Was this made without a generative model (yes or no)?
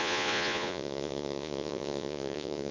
no